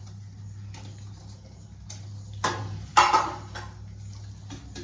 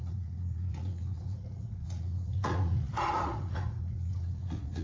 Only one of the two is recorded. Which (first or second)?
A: first